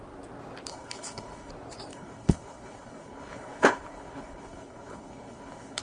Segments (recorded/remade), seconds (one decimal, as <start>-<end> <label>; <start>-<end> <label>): 0.0-0.7 recorded; 0.7-1.5 remade; 1.5-1.9 recorded; 1.9-5.8 remade